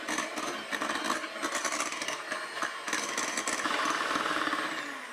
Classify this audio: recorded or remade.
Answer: recorded